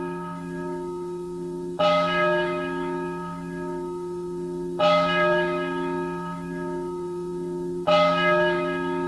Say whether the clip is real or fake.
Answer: fake